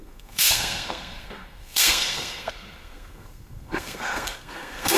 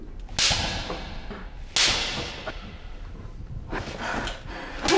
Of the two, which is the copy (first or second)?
first